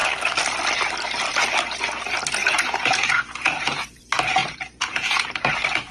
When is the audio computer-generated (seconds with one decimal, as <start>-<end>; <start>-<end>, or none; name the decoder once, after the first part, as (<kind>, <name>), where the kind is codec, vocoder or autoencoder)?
2.4-4.0 (vocoder, Vocos); 4.4-5.4